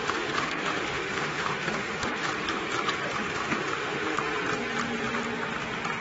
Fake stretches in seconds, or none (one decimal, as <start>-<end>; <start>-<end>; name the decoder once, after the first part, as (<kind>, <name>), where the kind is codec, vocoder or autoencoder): 0.0-2.3 (autoencoder, DAC-VAE); 3.2-4.3